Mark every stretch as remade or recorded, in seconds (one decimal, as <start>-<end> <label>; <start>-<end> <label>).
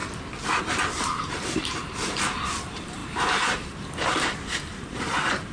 0.0-0.6 recorded; 0.6-5.5 remade